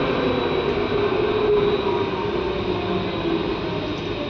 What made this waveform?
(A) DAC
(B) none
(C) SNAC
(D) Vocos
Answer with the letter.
B